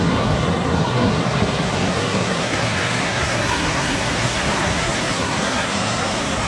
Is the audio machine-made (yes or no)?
yes